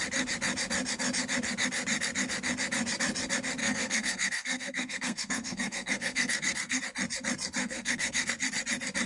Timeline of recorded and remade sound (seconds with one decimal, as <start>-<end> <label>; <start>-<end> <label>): 0.0-3.6 recorded; 3.6-6.8 remade; 6.8-7.6 recorded; 7.6-8.3 remade; 8.3-9.1 recorded